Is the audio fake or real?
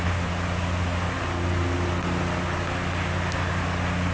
real